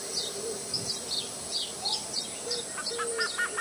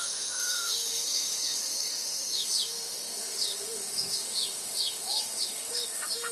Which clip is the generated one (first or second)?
second